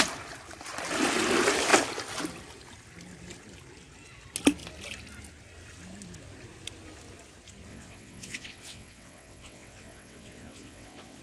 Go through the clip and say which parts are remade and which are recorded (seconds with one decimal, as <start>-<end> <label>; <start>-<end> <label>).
0.0-7.7 recorded; 7.7-11.2 remade